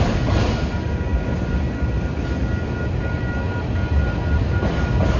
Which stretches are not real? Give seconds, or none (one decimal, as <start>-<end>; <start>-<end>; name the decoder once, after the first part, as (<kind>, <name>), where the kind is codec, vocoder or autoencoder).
none

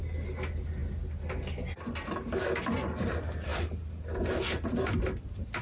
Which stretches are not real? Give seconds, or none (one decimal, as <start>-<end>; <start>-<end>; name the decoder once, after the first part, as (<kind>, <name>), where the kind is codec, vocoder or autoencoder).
none